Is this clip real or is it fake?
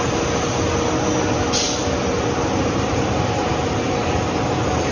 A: real